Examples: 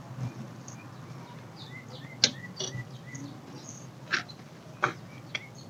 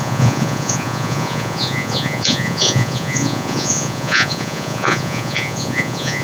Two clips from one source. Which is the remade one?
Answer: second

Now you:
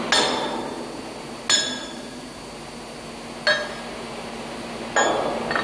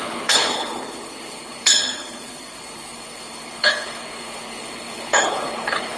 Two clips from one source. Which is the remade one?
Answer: second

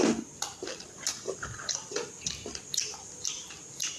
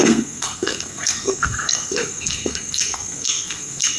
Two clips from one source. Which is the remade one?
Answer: second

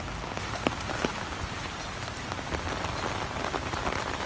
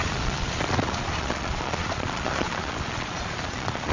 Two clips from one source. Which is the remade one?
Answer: second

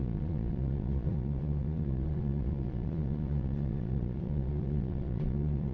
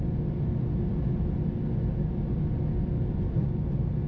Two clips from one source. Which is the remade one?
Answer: first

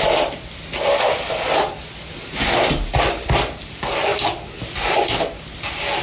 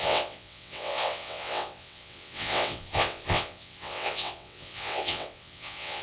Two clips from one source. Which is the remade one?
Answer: second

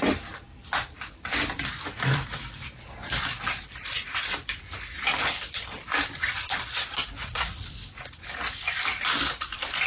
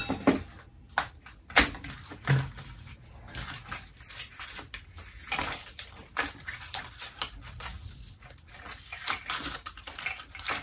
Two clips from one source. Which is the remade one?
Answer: first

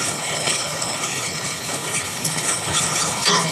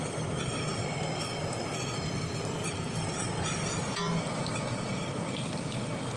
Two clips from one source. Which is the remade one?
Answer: first